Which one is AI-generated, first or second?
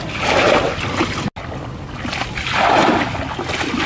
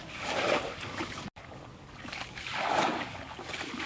second